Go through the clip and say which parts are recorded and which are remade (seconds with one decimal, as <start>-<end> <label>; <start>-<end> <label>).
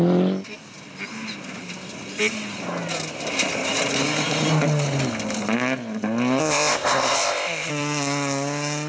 0.0-6.4 recorded; 6.4-7.7 remade; 7.7-8.9 recorded